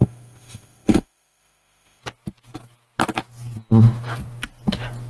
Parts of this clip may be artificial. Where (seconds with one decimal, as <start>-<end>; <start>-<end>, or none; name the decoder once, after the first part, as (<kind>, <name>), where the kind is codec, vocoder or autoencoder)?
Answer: 0.0-2.0 (autoencoder, DAC-VAE)